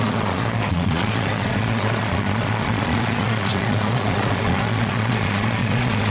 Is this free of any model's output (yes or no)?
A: no